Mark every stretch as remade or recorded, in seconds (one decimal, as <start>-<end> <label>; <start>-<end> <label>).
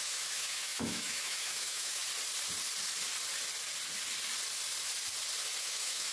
0.0-2.0 remade; 2.0-5.6 recorded; 5.6-6.1 remade